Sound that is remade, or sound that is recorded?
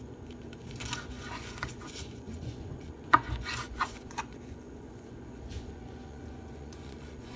remade